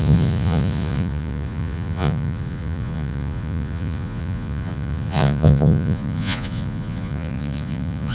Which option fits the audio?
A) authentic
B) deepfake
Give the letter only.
B